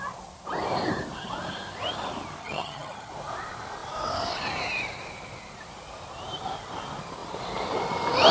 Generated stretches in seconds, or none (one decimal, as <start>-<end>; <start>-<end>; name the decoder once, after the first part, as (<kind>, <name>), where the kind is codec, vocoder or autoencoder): 2.4-3.1 (vocoder, HiFi-GAN)